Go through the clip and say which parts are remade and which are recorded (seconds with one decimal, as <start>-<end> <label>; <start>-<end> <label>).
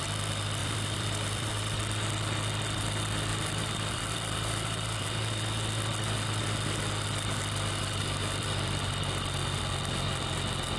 0.0-0.6 recorded; 0.6-1.5 remade; 1.5-3.3 recorded; 3.3-5.0 remade; 5.0-8.2 recorded; 8.2-9.6 remade; 9.6-10.8 recorded